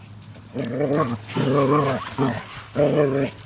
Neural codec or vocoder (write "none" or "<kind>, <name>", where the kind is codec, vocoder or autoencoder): none